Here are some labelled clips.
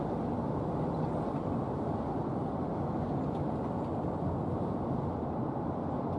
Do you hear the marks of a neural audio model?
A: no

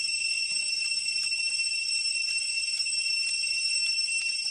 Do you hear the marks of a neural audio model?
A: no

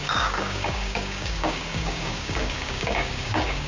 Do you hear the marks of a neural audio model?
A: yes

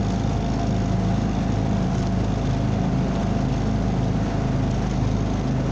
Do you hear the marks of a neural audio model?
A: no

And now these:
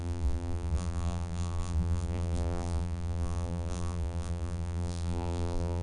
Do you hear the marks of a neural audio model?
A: yes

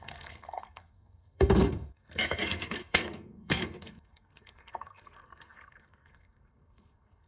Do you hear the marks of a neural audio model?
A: yes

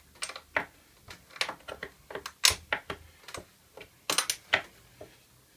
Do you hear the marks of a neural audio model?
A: no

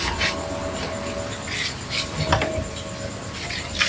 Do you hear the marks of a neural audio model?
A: no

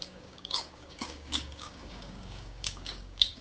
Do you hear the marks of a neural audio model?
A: yes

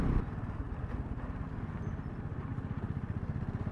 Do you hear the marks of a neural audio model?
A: no